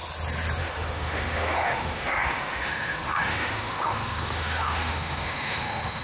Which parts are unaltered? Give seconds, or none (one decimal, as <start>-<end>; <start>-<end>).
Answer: 0.0-0.6

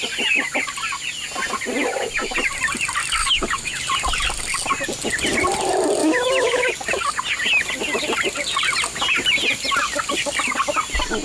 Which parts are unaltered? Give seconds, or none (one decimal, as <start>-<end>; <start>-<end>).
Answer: 0.0-3.2; 3.8-6.0; 6.7-11.2